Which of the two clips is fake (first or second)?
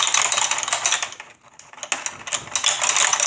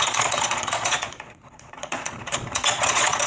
second